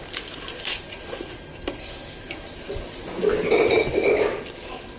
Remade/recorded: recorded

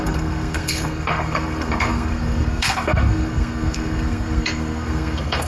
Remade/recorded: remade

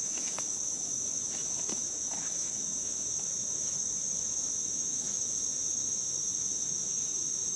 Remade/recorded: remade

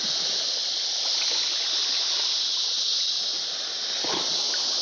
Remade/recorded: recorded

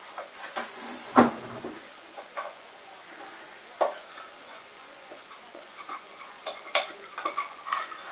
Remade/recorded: remade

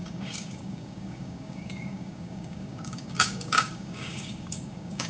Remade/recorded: remade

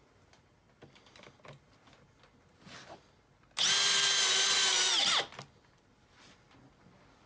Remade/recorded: recorded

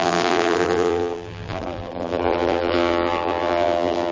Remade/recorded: remade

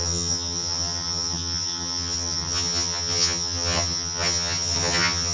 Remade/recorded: remade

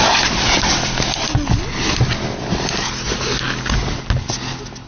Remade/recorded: recorded